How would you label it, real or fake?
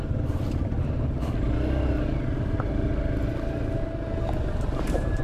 real